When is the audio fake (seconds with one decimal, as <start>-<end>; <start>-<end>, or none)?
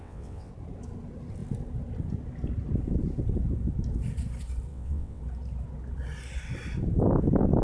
0.0-0.5; 4.7-5.2